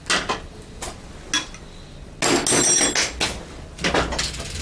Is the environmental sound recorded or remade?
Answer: recorded